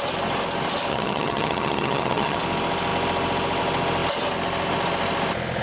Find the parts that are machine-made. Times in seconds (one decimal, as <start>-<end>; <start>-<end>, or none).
0.9-2.4

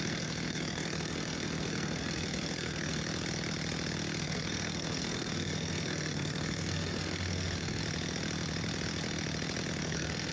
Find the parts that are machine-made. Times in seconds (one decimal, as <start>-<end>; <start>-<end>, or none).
0.0-3.0; 4.2-7.8; 9.8-10.3

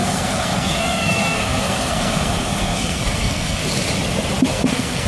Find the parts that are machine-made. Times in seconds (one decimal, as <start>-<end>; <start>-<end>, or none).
0.0-3.6; 4.5-5.1